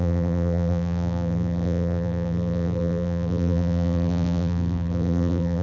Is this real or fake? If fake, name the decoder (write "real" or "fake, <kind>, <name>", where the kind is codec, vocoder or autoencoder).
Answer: fake, vocoder, BigVGAN v2